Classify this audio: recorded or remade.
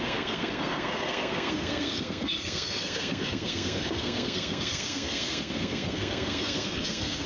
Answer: remade